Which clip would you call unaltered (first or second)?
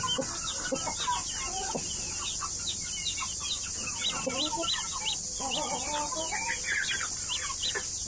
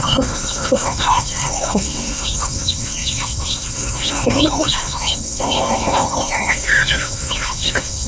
first